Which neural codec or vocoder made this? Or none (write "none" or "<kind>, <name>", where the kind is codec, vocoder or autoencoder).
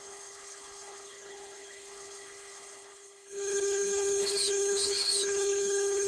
codec, HILCodec